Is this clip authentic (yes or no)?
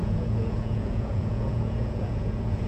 no